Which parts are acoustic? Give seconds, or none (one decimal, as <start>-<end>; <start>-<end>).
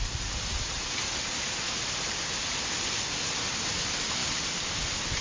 0.0-5.2